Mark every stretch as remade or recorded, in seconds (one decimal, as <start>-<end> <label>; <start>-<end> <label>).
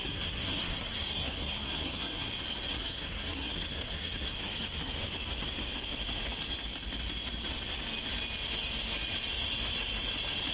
0.0-2.3 remade; 2.3-2.7 recorded; 2.7-4.9 remade; 4.9-10.5 recorded